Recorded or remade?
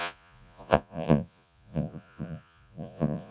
remade